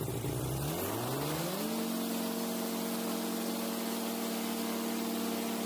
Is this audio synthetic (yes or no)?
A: no